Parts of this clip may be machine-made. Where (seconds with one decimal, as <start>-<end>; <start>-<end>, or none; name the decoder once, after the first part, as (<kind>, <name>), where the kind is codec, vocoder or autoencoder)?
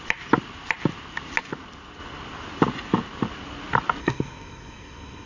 4.0-5.3 (codec, SNAC)